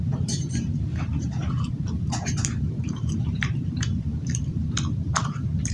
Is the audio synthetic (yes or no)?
yes